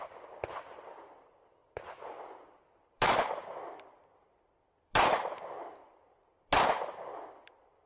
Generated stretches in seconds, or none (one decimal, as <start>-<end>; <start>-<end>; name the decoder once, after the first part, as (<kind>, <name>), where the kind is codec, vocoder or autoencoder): 0.0-7.9 (vocoder, BigVGAN v2)